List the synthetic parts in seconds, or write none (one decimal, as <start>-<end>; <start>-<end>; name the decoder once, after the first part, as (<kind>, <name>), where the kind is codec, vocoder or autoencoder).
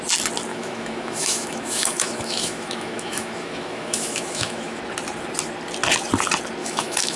0.5-4.8 (autoencoder, DAC-VAE); 6.6-7.2